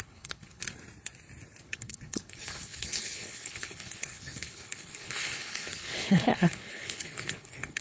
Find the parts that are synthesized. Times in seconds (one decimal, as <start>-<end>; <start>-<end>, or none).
0.0-0.6; 1.6-7.8